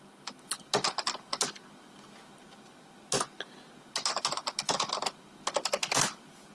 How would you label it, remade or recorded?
recorded